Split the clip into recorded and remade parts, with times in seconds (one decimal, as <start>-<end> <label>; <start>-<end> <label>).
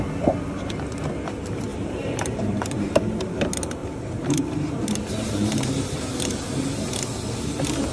0.0-1.7 recorded; 1.7-3.0 remade; 3.0-3.8 recorded; 3.8-6.8 remade; 6.8-7.9 recorded